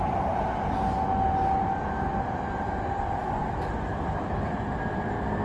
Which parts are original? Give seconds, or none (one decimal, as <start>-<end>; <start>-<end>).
0.0-3.4; 4.5-5.4